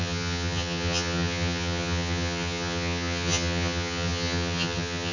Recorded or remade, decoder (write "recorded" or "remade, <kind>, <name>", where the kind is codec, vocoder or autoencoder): remade, vocoder, HiFi-GAN